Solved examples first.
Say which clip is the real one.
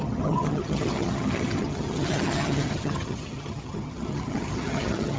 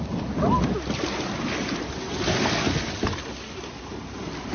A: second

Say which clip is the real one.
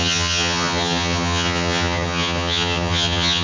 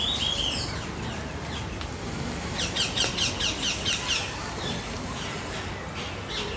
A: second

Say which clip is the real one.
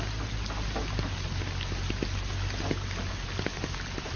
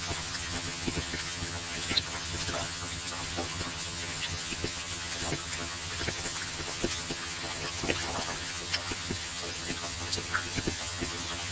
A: first